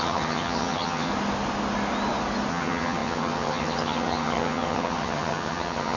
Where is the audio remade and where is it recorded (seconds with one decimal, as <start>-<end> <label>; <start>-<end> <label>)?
0.0-1.1 remade; 1.1-2.5 recorded; 2.5-6.0 remade